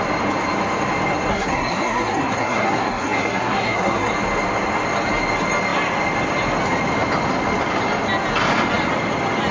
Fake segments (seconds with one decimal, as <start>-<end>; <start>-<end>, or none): 1.3-4.1